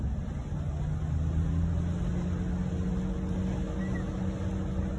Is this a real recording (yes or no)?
yes